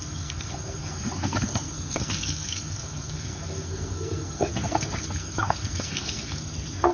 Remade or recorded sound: remade